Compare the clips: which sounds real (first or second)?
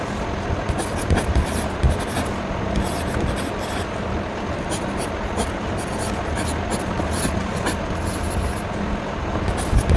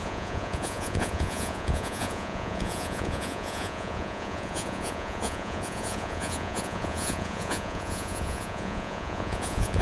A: first